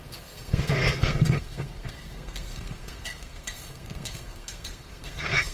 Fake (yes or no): yes